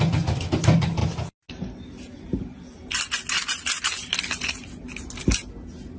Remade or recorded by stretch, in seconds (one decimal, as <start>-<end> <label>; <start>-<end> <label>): 0.0-6.0 recorded